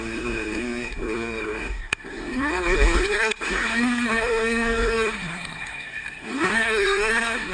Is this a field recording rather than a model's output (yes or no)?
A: no